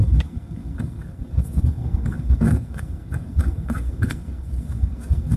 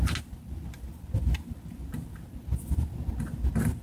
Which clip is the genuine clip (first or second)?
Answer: second